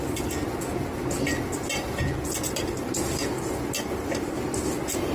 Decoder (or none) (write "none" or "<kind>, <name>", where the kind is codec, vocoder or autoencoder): none